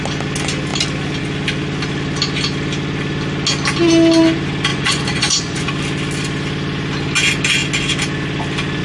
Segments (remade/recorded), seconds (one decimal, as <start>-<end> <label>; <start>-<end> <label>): 0.0-4.7 recorded; 4.7-5.7 remade; 5.7-8.8 recorded